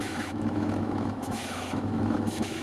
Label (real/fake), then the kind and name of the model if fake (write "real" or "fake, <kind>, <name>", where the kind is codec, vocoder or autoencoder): fake, autoencoder, DAC-VAE